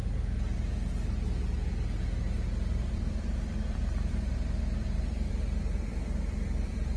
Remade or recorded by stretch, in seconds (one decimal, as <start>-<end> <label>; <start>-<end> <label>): 0.0-2.7 recorded; 2.7-7.0 remade